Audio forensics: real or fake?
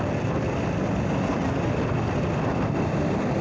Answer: real